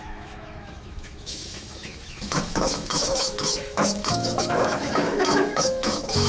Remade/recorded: remade